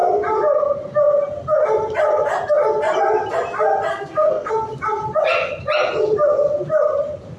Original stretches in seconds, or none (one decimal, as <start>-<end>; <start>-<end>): 0.0-3.9; 4.5-7.4